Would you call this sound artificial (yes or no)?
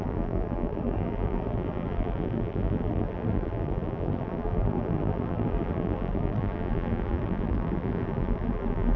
yes